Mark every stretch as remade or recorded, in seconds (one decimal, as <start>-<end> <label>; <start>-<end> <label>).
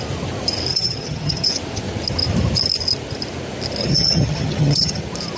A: 0.0-0.7 recorded; 0.7-1.5 remade; 1.5-3.8 recorded; 3.8-5.0 remade; 5.0-5.4 recorded